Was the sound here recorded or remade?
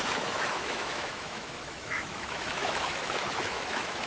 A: remade